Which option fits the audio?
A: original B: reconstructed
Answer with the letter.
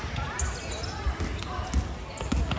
A